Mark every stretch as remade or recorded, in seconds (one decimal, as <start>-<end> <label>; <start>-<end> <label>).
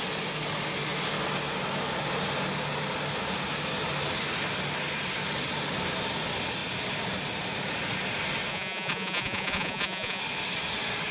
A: 0.0-8.5 recorded; 8.5-10.2 remade; 10.2-11.1 recorded